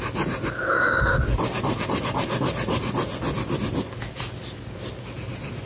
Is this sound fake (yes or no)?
no